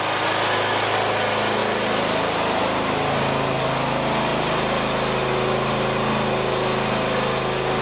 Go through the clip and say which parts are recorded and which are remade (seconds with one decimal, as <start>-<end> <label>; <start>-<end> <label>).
0.0-7.8 recorded